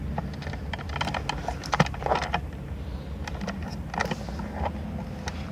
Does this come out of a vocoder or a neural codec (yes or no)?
no